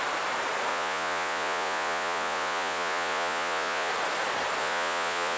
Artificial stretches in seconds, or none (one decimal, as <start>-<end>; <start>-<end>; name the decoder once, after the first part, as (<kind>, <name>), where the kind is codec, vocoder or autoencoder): 0.7-3.9 (vocoder, Vocos); 4.6-5.4